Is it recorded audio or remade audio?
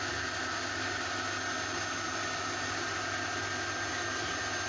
recorded